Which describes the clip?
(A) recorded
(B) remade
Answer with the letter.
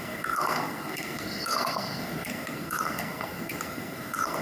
B